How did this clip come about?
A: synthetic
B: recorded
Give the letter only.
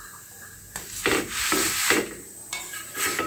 A